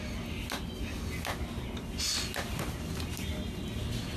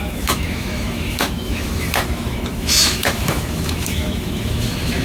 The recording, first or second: first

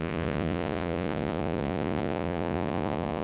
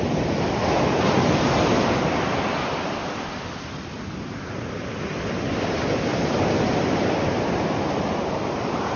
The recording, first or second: second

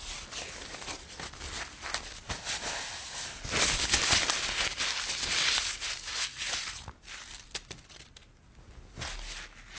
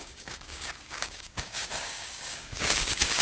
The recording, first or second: first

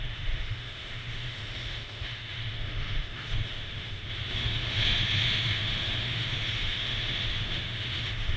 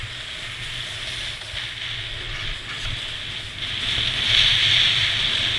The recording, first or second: second